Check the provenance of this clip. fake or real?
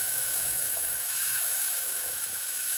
fake